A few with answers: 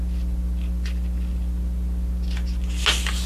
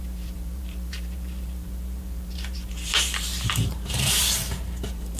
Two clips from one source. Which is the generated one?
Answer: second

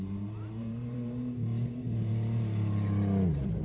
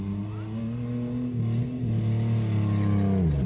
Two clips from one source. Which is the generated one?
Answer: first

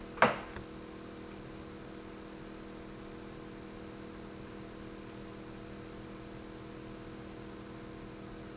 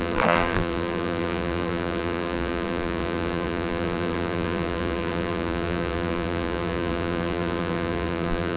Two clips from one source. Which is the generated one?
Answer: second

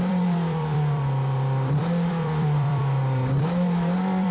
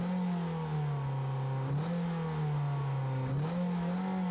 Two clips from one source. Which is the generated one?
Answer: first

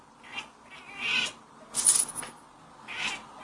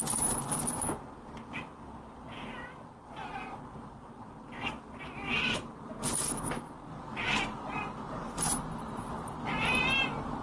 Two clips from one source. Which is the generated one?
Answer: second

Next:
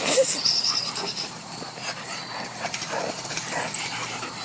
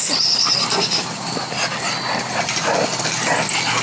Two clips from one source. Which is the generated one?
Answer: first